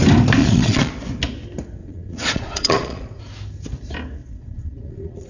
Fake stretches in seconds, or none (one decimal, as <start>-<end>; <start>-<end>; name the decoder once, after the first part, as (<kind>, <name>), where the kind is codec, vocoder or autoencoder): 0.4-0.9 (vocoder, Vocos); 1.8-3.2; 4.2-5.3